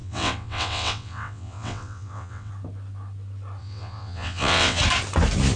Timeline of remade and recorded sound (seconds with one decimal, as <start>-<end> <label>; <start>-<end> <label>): 0.0-2.5 remade; 2.5-3.6 recorded; 3.6-4.8 remade; 4.8-5.6 recorded